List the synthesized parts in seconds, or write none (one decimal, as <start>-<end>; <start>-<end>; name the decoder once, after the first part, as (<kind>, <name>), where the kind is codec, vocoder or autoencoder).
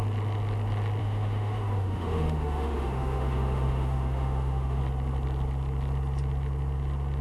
1.0-4.8 (autoencoder, DAC-VAE)